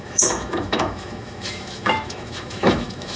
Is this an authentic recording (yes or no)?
no